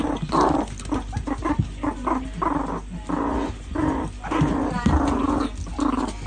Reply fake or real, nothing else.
real